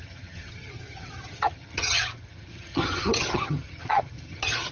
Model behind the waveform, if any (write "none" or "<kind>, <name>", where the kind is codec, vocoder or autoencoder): vocoder, HiFi-GAN